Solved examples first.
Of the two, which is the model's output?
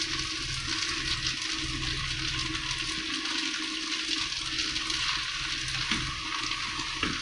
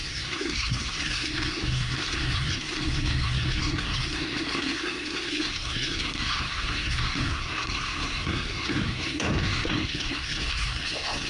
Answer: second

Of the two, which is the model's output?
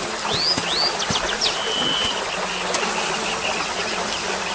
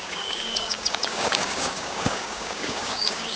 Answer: second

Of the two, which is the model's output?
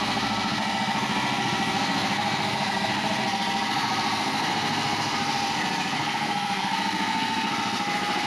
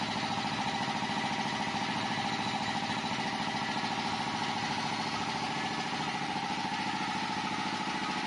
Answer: first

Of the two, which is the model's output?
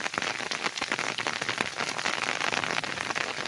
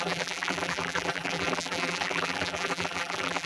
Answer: second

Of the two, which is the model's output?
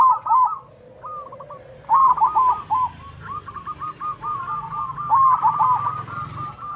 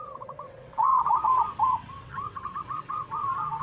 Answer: second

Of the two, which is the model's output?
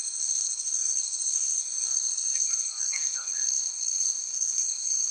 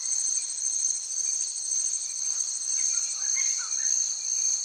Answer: first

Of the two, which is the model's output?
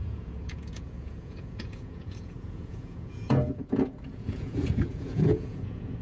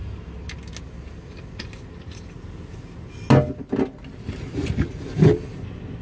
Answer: first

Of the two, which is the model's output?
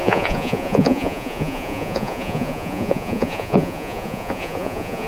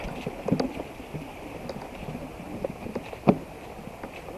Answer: first